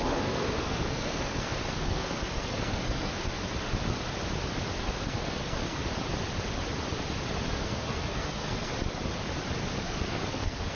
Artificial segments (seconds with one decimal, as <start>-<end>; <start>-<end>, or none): 0.0-3.4; 4.8-5.8; 7.5-8.7; 9.8-10.8

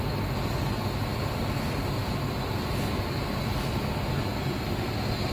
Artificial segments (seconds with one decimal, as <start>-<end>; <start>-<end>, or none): none

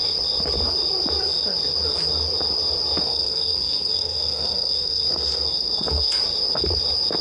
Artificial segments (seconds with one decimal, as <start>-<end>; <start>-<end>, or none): 3.0-6.2

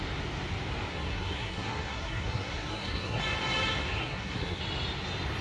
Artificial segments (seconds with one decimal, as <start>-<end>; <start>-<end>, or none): 0.9-3.2; 4.0-4.6

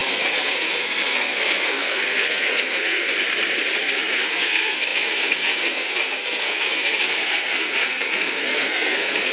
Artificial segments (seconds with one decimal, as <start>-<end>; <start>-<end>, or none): 0.0-3.1; 3.8-9.3